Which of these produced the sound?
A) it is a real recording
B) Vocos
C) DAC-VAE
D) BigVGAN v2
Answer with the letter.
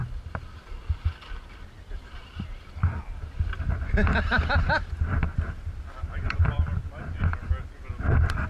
A